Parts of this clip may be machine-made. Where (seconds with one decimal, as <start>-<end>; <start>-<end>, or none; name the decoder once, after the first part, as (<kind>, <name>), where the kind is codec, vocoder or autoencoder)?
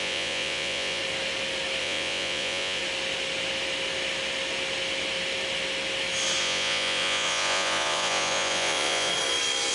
0.0-1.0 (vocoder, Vocos); 1.8-2.8; 6.4-9.1